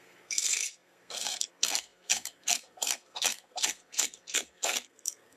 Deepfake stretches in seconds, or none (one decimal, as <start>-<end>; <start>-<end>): 0.0-5.4